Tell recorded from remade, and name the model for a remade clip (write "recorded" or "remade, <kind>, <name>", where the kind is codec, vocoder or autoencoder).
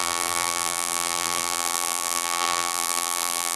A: remade, vocoder, BigVGAN v2